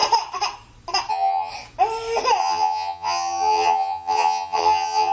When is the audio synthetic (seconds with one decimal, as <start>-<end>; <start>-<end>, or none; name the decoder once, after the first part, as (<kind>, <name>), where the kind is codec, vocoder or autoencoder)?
1.1-1.5 (vocoder, HiFi-GAN); 2.4-5.1